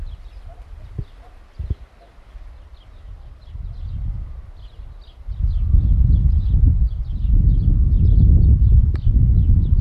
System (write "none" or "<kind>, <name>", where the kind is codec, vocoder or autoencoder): none